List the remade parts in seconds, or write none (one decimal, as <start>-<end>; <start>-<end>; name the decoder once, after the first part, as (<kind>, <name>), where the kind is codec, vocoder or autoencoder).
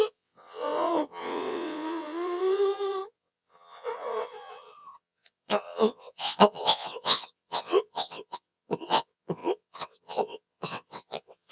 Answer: 0.0-11.5 (vocoder, WaveNeXt)